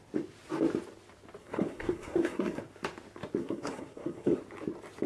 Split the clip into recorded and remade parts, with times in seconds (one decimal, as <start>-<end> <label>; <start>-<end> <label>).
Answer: 0.0-1.4 recorded; 1.4-2.6 remade; 2.6-3.4 recorded; 3.4-4.4 remade; 4.4-5.1 recorded